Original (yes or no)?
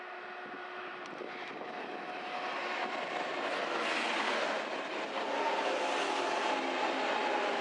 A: yes